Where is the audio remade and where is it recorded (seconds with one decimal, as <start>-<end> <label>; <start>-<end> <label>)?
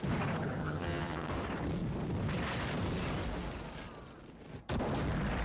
0.0-0.6 recorded; 0.6-1.3 remade; 1.3-5.4 recorded